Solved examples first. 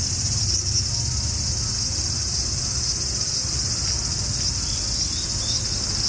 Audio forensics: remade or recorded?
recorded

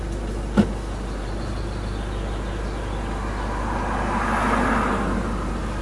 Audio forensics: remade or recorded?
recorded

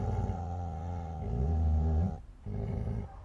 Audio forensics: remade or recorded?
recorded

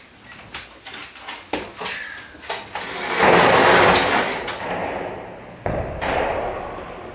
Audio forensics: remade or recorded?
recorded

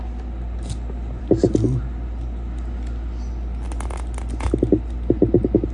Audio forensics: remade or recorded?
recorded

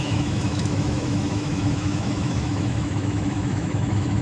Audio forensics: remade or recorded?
remade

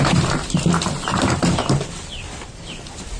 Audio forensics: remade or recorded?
recorded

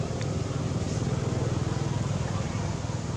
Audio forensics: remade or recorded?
recorded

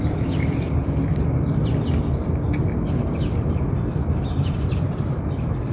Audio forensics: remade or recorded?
remade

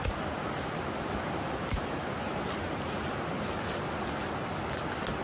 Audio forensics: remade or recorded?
recorded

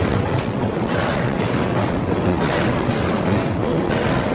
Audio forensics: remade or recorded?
remade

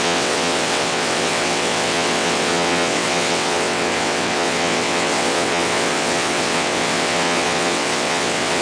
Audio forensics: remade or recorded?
remade